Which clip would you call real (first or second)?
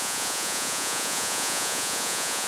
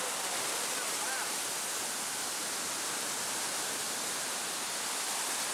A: second